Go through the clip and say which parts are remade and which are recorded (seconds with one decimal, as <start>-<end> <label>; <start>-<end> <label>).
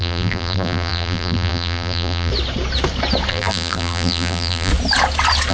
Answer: 0.0-2.3 remade; 2.3-3.3 recorded; 3.3-4.7 remade; 4.7-5.5 recorded